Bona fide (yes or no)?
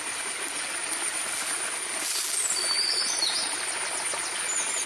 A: yes